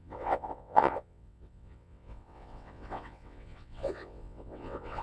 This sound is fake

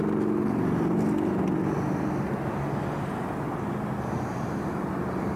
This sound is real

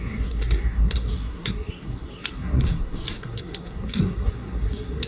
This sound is fake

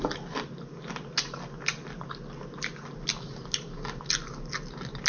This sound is real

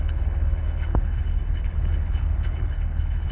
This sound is fake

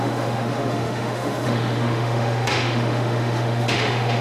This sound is fake